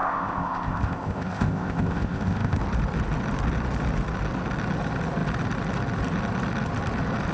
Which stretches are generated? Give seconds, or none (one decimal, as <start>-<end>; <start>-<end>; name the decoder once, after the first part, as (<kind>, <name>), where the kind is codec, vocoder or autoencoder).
0.0-2.6 (codec, ZipCodec)